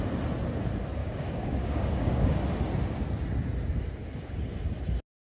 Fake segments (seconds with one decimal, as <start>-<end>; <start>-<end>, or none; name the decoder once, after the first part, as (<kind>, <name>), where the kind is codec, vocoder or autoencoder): 1.0-2.4 (codec, DAC)